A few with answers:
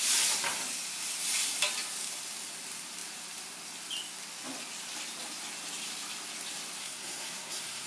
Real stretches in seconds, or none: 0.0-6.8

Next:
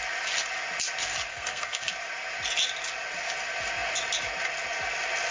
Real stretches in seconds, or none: 0.0-1.3; 1.9-5.3

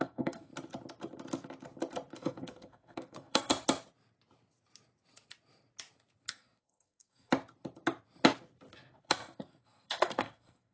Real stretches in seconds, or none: 0.5-2.2; 3.5-6.3; 7.3-9.0